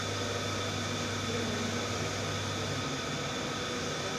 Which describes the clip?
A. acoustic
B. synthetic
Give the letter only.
A